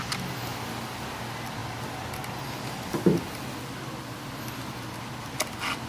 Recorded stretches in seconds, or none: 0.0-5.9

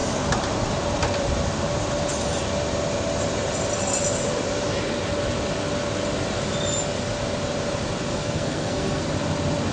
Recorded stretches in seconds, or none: 0.0-8.1; 9.1-9.7

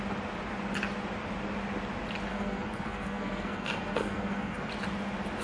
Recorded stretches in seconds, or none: 0.0-2.3; 4.7-5.4

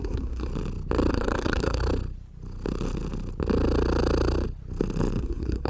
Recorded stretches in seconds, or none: 0.5-1.1; 1.8-5.2

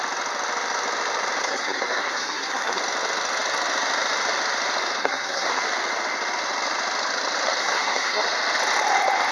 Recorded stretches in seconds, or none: 0.0-1.4; 2.8-5.0; 5.6-7.6; 8.2-9.3

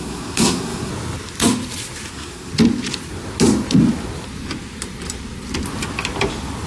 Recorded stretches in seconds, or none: 0.9-2.1; 2.5-6.7

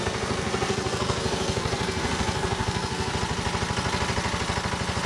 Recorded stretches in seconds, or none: 3.1-5.1